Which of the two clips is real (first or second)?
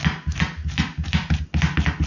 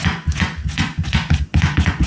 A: first